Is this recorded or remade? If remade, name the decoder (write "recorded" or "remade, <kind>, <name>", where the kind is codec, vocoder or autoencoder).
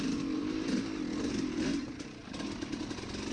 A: recorded